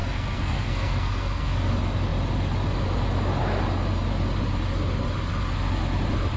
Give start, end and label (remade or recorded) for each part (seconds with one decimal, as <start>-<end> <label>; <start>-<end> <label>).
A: 0.0-1.7 remade; 1.7-6.4 recorded